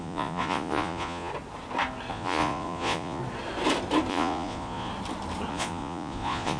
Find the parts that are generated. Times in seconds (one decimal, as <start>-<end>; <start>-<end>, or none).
0.0-1.3; 2.1-3.2; 4.1-4.9; 5.5-6.6